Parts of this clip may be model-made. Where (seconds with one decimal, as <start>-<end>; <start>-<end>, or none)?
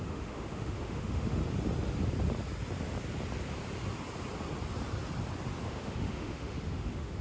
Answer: 0.0-1.4; 5.6-7.2